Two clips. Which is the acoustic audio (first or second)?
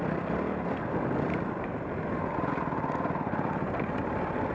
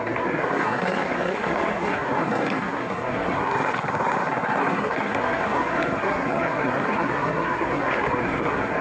first